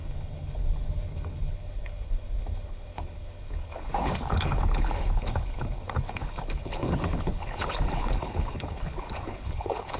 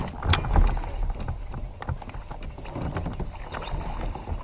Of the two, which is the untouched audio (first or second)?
second